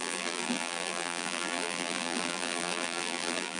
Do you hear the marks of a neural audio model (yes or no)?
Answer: yes